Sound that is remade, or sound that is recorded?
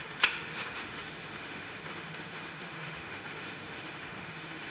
remade